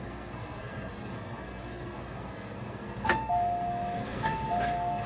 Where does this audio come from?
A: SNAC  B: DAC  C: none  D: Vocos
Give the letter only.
A